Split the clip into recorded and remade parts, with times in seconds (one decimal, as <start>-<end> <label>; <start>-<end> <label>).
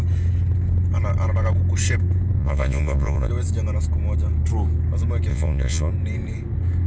0.0-2.4 recorded; 2.4-3.3 remade; 3.3-5.3 recorded; 5.3-5.9 remade; 5.9-6.9 recorded